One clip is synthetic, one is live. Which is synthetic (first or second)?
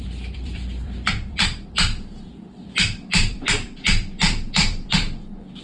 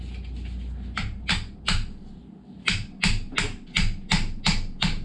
first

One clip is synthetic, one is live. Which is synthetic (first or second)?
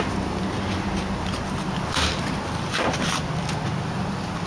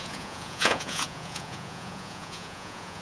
second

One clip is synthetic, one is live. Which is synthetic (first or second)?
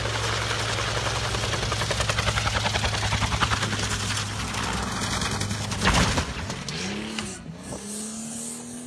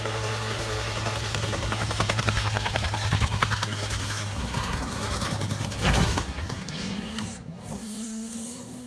second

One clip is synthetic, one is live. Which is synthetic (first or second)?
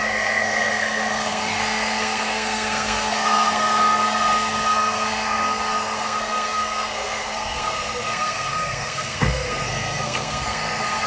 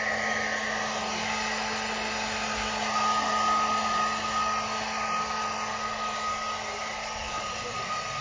first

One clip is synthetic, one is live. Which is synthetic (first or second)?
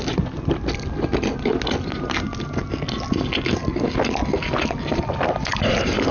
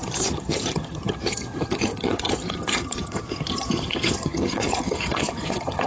second